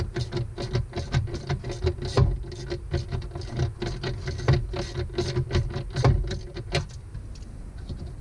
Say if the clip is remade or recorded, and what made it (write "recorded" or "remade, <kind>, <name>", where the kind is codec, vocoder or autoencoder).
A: recorded